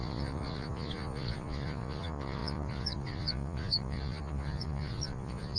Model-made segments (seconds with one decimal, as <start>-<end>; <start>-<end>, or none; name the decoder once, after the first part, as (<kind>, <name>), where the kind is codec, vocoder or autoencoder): 0.0-5.6 (vocoder, Vocos)